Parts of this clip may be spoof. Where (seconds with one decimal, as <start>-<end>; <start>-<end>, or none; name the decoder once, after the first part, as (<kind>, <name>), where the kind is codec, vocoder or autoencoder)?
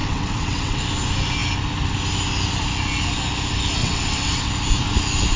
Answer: 0.0-0.8 (vocoder, WaveNeXt); 3.8-4.5